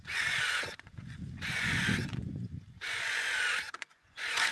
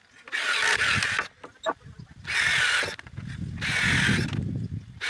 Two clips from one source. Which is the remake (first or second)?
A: first